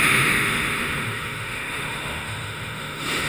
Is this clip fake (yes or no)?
yes